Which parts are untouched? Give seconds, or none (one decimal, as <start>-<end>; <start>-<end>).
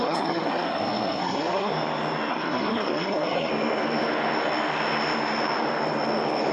1.7-2.3; 3.5-6.5